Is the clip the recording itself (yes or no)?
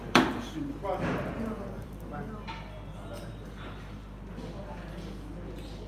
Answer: no